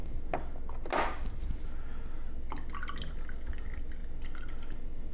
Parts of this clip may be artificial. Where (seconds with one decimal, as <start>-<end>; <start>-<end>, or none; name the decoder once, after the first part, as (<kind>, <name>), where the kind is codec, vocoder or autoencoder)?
none

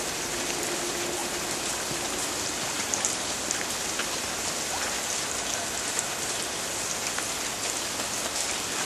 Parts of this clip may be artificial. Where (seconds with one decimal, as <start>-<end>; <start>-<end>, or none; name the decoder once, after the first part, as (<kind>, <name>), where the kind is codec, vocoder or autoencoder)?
1.2-3.7 (vocoder, BigVGAN v2)